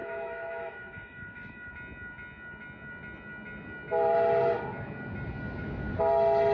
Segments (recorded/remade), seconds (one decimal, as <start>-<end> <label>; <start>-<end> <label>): 0.0-1.7 remade; 1.7-6.5 recorded